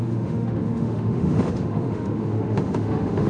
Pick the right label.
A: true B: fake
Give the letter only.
B